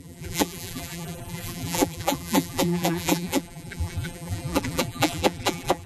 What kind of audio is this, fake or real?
fake